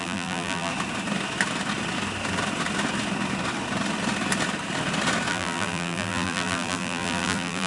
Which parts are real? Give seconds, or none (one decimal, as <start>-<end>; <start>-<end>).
0.7-5.3